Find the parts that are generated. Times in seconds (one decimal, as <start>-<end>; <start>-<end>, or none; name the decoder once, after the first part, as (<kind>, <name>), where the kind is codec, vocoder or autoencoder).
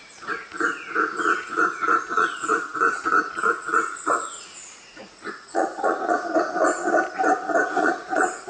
0.0-6.7 (vocoder, Vocos); 7.6-8.5